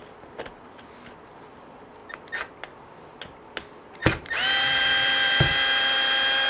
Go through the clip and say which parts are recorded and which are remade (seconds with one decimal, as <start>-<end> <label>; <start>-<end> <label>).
0.0-4.0 recorded; 4.0-5.5 remade; 5.5-6.5 recorded